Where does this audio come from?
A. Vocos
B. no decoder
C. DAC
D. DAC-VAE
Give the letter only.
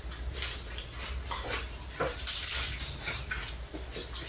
B